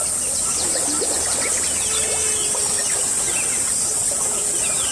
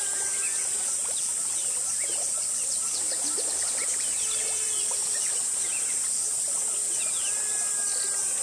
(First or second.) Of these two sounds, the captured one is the first